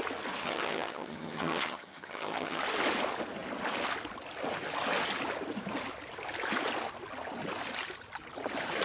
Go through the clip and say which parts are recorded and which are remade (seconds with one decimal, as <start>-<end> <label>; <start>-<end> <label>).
0.0-0.4 recorded; 0.4-2.6 remade; 2.6-8.8 recorded